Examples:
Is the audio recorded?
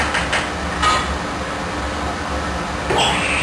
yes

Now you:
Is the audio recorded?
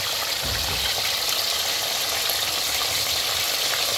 yes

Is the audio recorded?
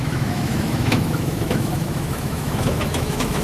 no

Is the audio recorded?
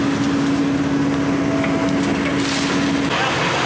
yes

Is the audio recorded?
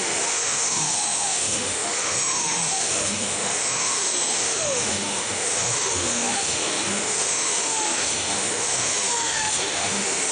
no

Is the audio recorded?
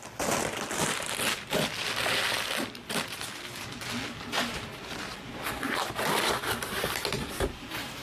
yes